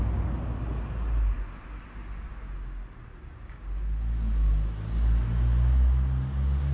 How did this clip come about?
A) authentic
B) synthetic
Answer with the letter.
A